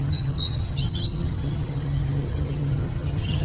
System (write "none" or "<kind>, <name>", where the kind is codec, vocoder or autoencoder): vocoder, HiFi-GAN